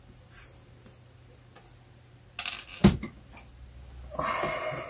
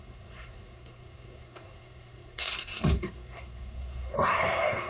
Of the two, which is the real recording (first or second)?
first